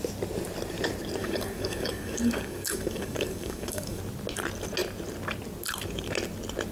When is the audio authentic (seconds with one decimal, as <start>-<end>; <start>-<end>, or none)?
0.0-1.2; 4.0-6.7